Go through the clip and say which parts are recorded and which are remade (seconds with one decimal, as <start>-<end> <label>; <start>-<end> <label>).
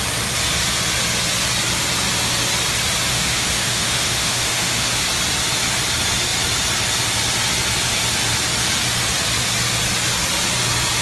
0.0-3.1 recorded; 3.1-5.0 remade; 5.0-11.0 recorded